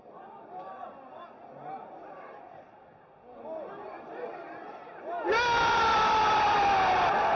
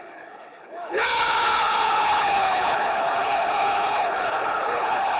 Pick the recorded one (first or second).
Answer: first